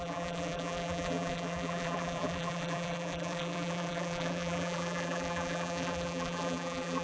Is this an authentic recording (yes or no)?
no